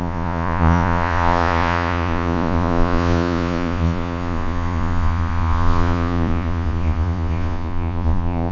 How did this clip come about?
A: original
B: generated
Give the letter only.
B